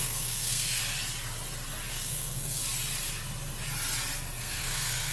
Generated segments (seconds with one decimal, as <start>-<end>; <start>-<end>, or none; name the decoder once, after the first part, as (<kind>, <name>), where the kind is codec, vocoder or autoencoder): 0.0-0.8 (codec, SNAC); 1.9-2.6; 4.4-5.1